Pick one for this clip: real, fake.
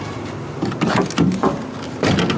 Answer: real